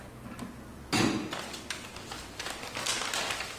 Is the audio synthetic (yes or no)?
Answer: no